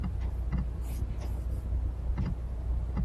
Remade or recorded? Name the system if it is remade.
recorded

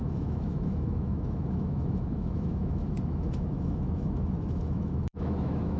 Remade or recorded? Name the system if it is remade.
remade, autoencoder, DAC-VAE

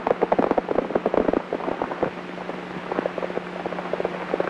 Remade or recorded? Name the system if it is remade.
recorded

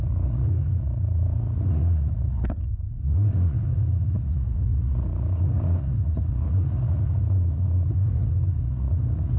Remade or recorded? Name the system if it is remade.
remade, vocoder, Vocos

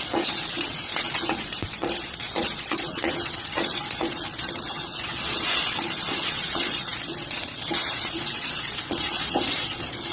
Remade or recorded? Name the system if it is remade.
remade, vocoder, Vocos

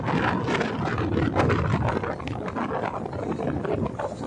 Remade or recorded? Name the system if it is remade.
recorded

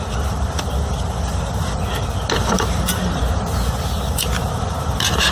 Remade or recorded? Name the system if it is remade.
remade, vocoder, BigVGAN v2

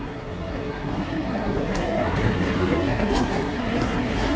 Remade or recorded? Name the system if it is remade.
remade, codec, SNAC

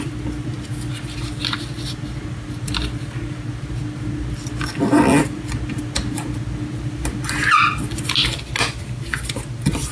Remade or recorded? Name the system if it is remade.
recorded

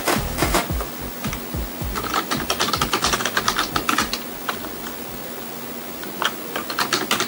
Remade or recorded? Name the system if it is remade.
recorded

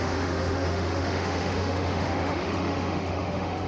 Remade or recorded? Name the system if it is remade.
remade, autoencoder, DAC-VAE